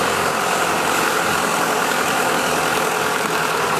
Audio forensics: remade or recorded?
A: remade